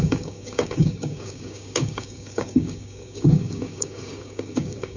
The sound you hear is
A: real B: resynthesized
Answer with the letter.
B